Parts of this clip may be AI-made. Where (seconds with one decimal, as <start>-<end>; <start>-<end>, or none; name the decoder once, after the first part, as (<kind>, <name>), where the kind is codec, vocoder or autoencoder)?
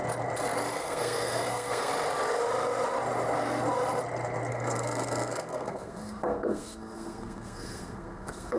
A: 0.8-1.9 (codec, SNAC); 4.5-8.6